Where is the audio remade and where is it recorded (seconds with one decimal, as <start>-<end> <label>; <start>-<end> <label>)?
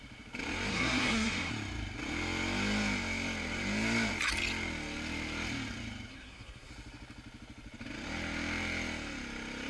0.0-0.7 recorded; 0.7-1.5 remade; 1.5-6.1 recorded; 6.1-6.7 remade; 6.7-9.7 recorded